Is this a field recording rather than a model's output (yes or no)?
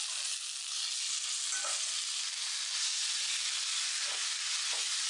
yes